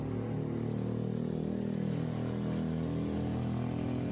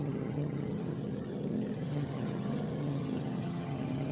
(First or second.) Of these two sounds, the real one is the first